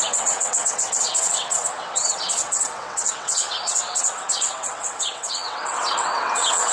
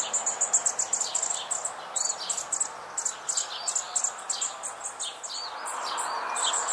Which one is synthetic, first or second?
first